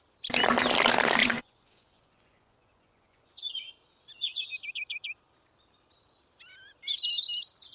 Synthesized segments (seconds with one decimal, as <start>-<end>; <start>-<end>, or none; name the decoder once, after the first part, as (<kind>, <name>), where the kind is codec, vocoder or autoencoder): 1.2-3.7 (vocoder, Vocos)